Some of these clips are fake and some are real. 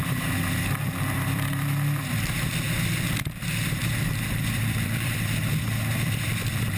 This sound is fake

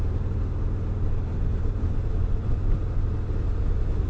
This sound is real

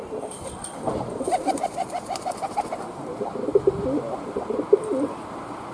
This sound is fake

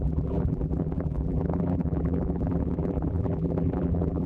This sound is fake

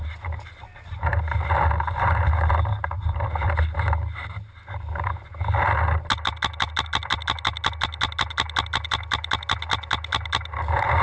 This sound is real